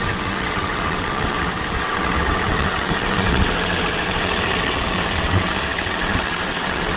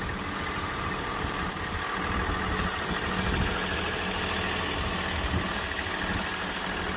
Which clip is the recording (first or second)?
second